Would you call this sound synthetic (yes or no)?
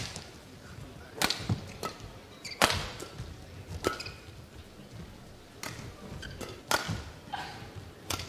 no